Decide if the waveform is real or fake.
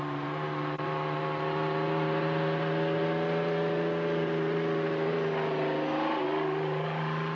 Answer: real